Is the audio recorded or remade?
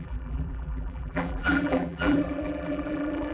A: remade